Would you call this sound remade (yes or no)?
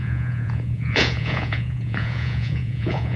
yes